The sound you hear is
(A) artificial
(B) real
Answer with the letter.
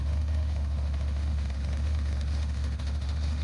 A